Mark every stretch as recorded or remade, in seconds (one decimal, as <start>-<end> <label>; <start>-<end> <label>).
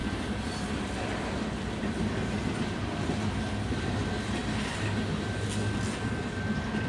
0.0-6.9 recorded